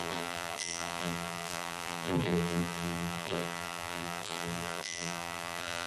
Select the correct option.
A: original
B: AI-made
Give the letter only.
B